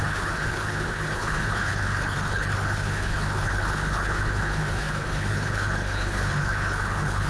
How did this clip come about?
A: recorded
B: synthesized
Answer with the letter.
B